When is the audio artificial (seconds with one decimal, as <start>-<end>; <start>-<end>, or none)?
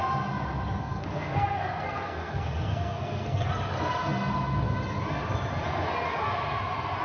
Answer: 0.8-3.5